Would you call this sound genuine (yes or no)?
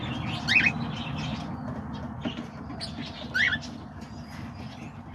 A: yes